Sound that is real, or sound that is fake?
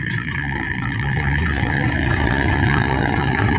fake